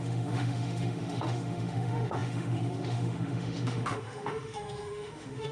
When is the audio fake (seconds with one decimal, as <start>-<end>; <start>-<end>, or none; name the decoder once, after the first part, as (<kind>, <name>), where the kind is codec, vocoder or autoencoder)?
0.0-5.5 (autoencoder, DAC-VAE)